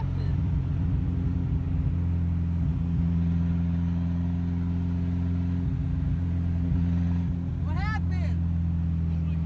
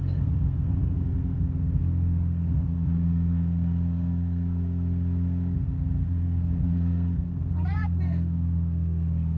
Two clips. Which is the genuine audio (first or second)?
first